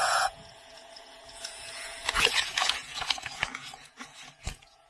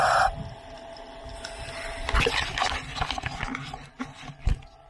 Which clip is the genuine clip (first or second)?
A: second